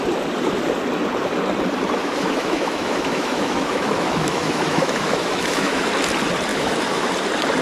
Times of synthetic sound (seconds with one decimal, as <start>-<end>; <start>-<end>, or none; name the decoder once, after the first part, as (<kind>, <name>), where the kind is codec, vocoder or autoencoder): 2.0-5.9 (autoencoder, DAC-VAE); 6.5-7.1